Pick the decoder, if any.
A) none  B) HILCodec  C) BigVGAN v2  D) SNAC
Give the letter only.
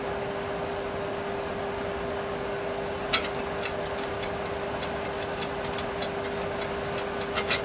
A